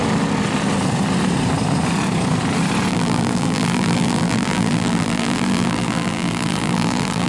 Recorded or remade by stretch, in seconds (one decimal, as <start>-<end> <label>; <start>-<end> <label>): 0.0-2.9 recorded; 2.9-7.3 remade